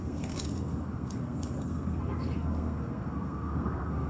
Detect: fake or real fake